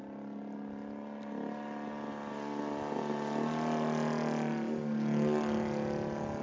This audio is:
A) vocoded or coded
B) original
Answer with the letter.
B